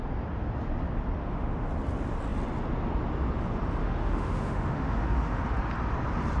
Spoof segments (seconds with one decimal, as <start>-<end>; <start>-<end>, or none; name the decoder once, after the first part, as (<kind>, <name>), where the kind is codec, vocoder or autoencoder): 1.2-1.7 (autoencoder, DAC-VAE); 3.8-5.4